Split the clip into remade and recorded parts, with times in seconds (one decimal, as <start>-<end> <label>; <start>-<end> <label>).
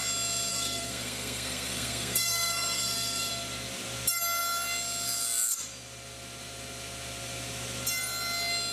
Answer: 0.0-0.5 recorded; 0.5-3.3 remade; 3.3-8.7 recorded